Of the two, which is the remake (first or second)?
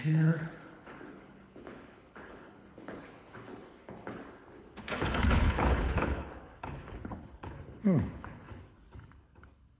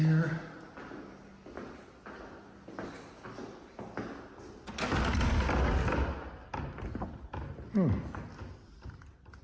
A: first